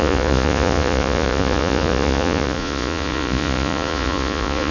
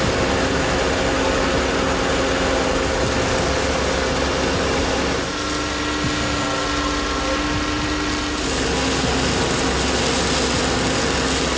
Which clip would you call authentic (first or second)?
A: second